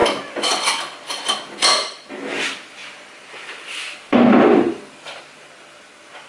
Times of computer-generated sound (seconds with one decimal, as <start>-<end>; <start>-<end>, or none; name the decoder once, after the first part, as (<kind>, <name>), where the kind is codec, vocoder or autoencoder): 2.8-5.2 (vocoder, BigVGAN v2)